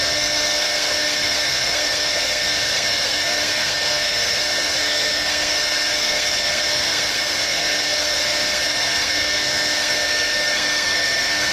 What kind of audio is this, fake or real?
fake